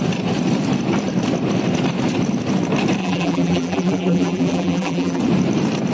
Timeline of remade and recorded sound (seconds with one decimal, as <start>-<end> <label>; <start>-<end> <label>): 0.0-3.0 recorded; 3.0-5.2 remade; 5.2-5.9 recorded